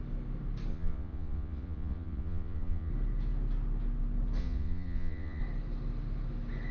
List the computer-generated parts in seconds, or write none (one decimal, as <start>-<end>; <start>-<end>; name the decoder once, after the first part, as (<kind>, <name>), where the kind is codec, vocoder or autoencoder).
0.7-2.9 (vocoder, Vocos); 4.4-5.4

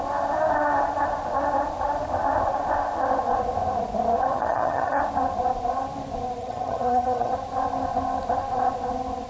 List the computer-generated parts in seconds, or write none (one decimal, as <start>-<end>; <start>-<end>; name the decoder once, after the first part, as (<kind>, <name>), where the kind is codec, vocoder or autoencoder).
4.3-5.0 (vocoder, HiFi-GAN); 6.4-7.3

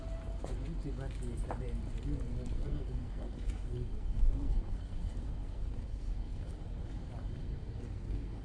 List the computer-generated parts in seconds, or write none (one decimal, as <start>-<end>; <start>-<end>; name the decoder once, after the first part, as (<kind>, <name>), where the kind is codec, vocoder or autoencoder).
2.3-6.8 (codec, SNAC); 7.4-8.4